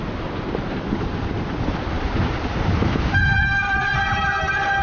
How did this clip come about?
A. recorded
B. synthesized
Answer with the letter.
A